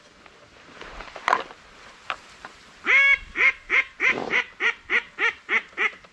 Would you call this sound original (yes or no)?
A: no